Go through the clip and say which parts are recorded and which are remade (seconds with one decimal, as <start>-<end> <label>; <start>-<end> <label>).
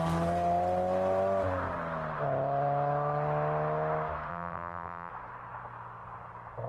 0.0-4.3 recorded; 4.3-5.1 remade; 5.1-6.7 recorded